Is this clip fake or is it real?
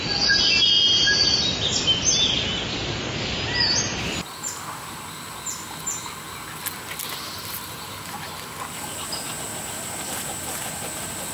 real